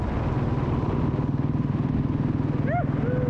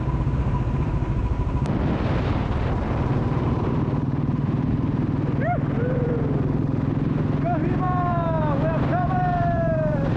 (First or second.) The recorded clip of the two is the first